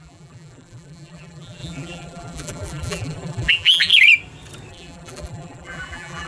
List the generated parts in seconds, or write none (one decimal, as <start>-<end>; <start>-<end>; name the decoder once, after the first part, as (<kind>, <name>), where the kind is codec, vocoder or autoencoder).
0.0-3.9 (vocoder, BigVGAN v2); 4.7-6.3